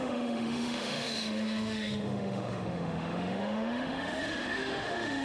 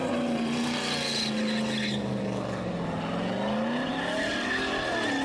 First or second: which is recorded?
second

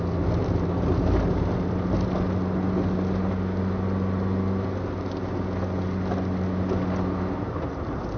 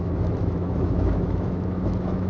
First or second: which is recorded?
first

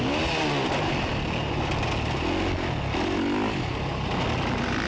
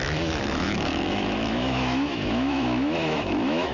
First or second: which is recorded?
first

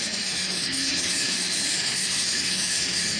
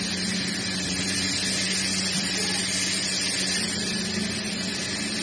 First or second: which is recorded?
second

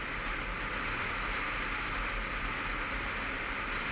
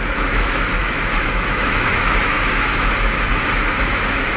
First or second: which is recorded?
first